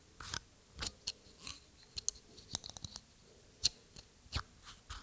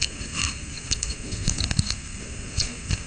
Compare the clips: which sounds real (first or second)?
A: first